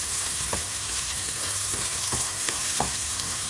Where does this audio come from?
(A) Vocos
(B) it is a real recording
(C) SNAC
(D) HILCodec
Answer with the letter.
C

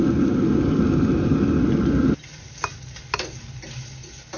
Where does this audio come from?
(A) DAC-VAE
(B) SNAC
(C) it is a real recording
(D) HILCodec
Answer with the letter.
C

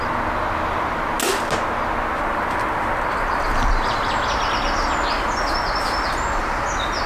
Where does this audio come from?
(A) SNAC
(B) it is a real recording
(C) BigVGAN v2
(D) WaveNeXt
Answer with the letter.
B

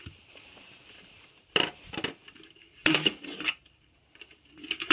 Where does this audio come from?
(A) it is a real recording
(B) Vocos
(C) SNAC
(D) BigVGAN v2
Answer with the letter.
D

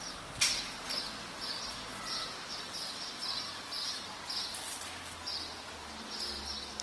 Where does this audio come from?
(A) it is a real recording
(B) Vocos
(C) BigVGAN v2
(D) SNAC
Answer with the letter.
A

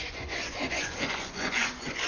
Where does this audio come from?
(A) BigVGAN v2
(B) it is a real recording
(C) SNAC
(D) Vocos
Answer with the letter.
D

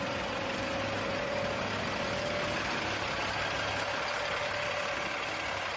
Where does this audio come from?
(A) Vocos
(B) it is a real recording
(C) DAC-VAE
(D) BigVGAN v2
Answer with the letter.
B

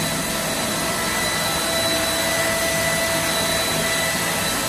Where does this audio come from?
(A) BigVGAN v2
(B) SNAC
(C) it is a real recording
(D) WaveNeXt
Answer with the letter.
C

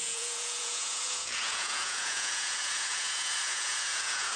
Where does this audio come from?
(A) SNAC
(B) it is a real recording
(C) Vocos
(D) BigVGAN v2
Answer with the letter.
C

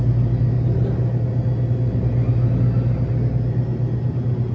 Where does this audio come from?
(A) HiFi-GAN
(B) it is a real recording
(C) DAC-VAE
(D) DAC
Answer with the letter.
B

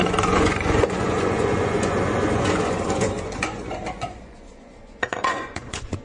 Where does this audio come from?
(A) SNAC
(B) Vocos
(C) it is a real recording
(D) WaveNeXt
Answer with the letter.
B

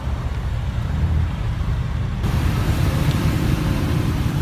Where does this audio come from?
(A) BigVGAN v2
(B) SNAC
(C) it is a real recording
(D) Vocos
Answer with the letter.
A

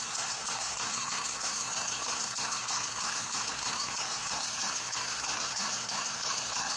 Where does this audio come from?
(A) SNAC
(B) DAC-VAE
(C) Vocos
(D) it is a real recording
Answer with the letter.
A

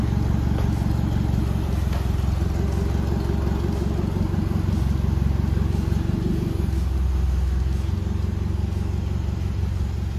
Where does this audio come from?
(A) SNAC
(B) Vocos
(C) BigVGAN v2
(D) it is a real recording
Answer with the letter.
D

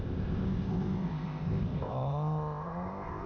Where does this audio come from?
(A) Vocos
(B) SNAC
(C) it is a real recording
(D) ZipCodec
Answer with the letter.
D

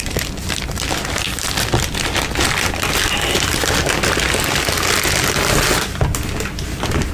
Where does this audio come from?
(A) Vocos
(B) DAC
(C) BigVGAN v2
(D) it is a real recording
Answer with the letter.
D